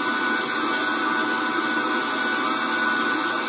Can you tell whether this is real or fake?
real